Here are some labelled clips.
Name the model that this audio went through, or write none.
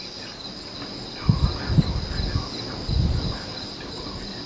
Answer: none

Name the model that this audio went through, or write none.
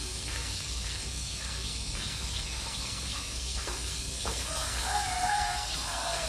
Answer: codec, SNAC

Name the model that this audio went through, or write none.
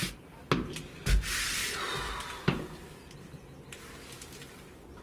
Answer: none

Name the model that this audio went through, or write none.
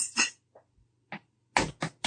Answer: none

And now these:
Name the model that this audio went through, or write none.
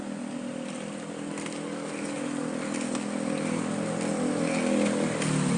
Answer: none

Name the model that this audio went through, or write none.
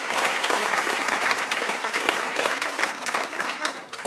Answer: codec, SNAC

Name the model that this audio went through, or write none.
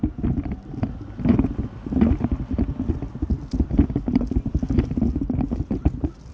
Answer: none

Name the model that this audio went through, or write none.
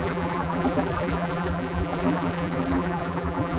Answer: vocoder, BigVGAN v2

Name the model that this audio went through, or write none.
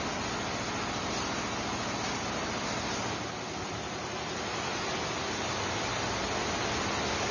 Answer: none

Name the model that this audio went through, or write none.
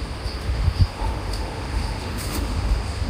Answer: autoencoder, DAC-VAE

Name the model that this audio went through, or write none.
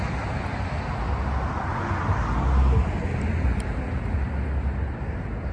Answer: none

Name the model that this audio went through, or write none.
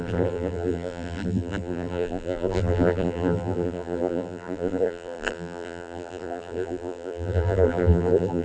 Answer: vocoder, BigVGAN v2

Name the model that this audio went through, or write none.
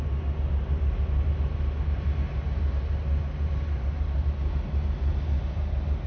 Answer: none